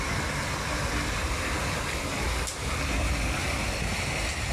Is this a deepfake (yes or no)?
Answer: no